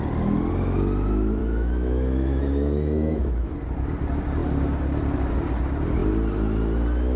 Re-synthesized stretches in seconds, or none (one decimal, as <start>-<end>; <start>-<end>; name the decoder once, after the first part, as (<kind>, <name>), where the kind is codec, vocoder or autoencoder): 1.4-3.5 (autoencoder, DAC-VAE)